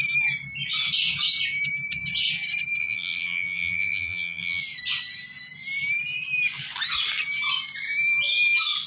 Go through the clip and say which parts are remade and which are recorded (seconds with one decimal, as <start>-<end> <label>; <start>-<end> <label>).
0.0-2.8 recorded; 2.8-4.6 remade; 4.6-8.9 recorded